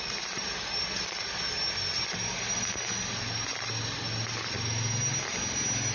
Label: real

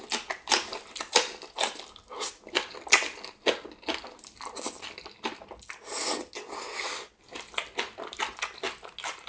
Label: real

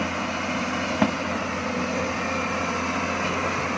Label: real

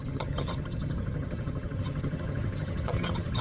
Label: fake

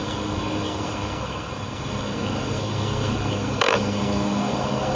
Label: fake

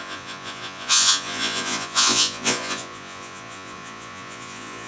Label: fake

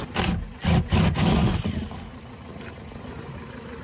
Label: real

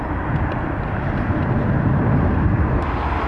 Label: real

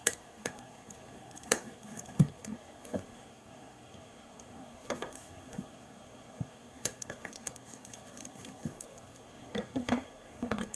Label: fake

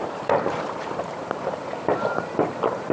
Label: fake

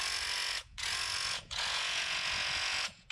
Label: fake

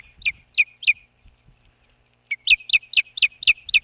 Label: real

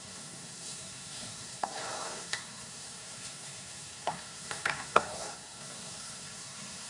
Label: fake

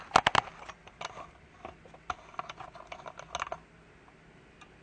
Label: real